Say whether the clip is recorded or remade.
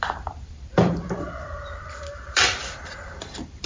remade